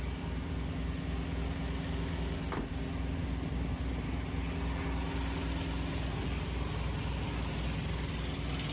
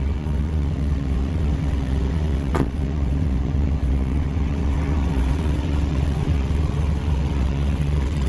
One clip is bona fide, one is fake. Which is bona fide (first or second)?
first